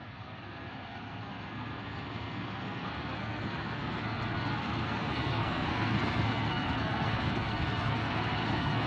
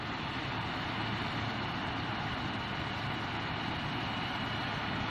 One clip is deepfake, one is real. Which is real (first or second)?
second